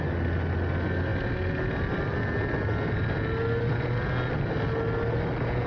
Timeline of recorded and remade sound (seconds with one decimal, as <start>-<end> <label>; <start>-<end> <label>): 0.0-5.7 recorded